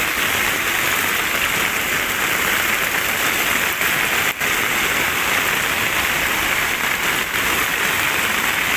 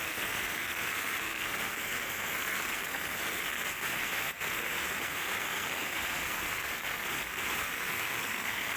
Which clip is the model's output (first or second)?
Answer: second